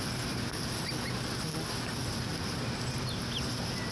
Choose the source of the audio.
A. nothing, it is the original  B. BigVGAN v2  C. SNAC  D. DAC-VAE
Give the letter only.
A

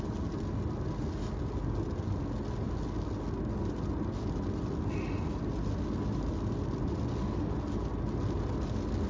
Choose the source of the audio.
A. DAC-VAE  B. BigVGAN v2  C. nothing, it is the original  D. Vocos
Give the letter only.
C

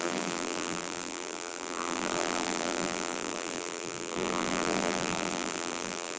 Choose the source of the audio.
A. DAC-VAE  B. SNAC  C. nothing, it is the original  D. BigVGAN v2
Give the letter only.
D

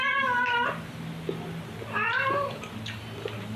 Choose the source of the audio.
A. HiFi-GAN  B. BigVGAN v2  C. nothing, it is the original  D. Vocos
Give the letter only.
B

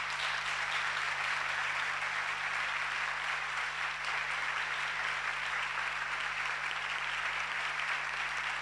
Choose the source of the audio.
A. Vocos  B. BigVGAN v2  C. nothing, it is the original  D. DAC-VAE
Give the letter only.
B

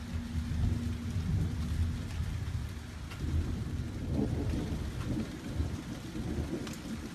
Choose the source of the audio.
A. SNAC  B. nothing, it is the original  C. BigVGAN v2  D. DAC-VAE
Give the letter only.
B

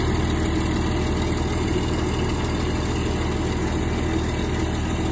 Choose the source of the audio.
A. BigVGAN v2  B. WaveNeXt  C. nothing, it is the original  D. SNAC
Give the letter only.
C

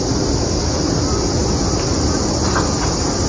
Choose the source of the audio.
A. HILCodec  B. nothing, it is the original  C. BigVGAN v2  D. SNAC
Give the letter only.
B